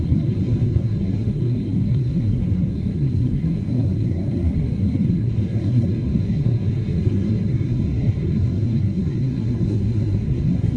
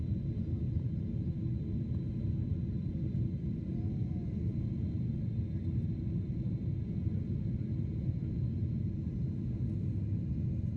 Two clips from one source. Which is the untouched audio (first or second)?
second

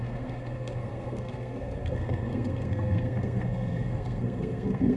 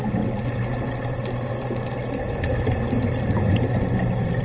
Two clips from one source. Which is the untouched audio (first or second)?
second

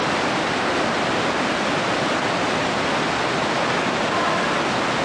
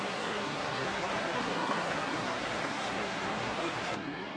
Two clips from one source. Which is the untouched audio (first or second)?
first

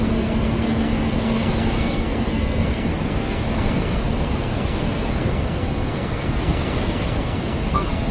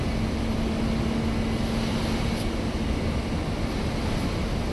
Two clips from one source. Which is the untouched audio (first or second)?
second